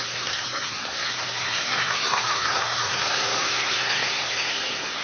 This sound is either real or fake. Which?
fake